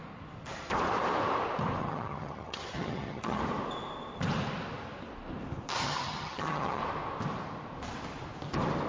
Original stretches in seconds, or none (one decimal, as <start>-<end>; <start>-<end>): 0.0-1.8; 3.4-5.8; 6.8-8.9